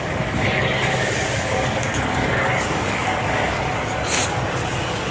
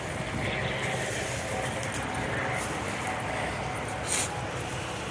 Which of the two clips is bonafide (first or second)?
second